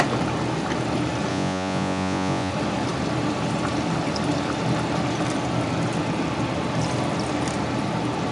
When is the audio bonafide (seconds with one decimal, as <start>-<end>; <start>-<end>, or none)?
0.0-1.3; 2.5-8.3